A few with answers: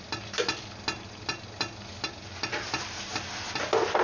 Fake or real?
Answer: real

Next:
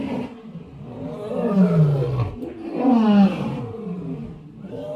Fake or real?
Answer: real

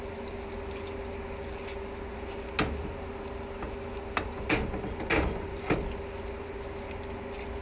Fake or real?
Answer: real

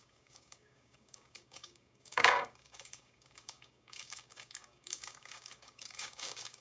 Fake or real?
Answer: fake